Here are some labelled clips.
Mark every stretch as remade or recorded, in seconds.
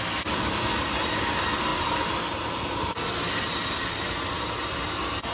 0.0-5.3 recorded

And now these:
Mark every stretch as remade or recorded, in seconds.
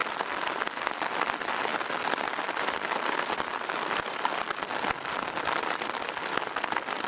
0.0-7.1 recorded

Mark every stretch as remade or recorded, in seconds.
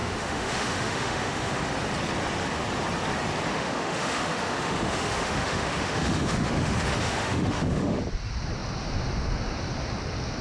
0.0-1.6 remade; 1.6-3.5 recorded; 3.5-8.0 remade; 8.0-10.4 recorded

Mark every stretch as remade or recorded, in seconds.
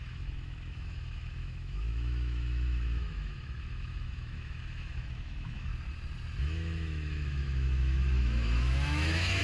0.0-5.7 remade; 5.7-6.4 recorded; 6.4-9.4 remade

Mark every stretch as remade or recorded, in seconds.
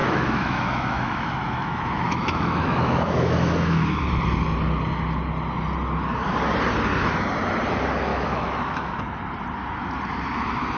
0.0-4.0 remade; 4.0-8.1 recorded; 8.1-9.0 remade; 9.0-10.8 recorded